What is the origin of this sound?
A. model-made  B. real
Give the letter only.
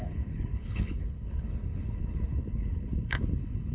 A